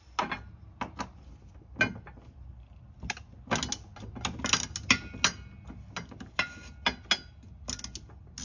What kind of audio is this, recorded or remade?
recorded